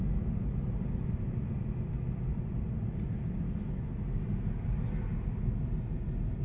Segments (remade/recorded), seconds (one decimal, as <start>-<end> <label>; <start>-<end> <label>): 0.0-6.4 recorded